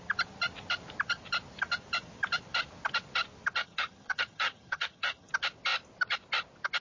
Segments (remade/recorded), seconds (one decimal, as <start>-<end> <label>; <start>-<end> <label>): 0.0-3.6 recorded; 3.6-5.3 remade; 5.3-6.8 recorded